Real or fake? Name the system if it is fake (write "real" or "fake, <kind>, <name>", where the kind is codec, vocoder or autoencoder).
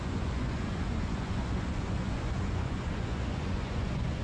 fake, vocoder, Vocos